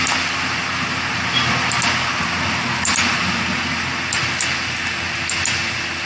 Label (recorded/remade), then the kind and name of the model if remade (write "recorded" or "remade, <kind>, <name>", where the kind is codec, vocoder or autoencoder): recorded